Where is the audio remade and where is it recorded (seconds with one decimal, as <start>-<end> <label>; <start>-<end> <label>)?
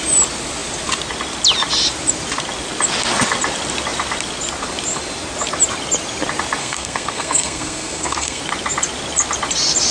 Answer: 0.0-6.6 recorded; 6.6-8.4 remade; 8.4-9.9 recorded